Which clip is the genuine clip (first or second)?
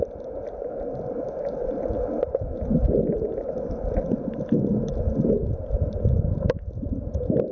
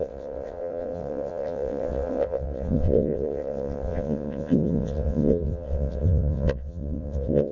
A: first